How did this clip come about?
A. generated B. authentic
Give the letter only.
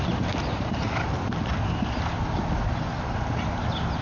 B